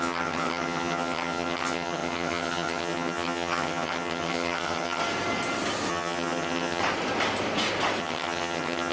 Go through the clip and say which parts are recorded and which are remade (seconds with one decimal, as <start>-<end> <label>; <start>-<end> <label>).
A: 0.0-5.0 remade; 5.0-5.9 recorded; 5.9-6.8 remade; 6.8-8.0 recorded; 8.0-8.9 remade